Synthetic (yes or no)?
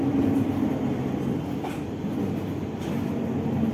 no